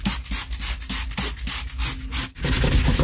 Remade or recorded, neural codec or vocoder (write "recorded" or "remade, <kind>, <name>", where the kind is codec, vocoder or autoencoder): recorded